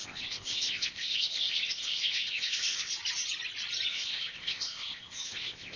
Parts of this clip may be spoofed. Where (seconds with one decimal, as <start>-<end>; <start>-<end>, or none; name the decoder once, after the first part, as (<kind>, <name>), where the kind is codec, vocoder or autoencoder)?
0.0-2.9 (codec, ZipCodec); 3.9-5.8